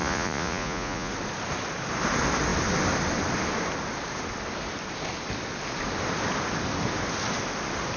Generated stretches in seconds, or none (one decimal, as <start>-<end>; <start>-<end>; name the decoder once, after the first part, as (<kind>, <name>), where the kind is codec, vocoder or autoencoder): 0.0-1.1 (vocoder, Vocos)